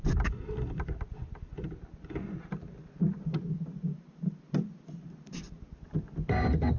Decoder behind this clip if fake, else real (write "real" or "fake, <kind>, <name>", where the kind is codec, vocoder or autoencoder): real